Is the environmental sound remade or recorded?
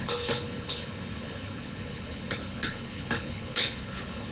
remade